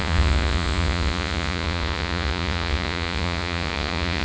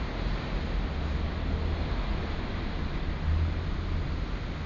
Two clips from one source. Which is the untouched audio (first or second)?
second